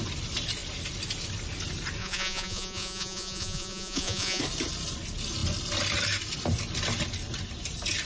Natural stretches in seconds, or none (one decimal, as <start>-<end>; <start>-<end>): 0.0-2.0; 4.4-8.1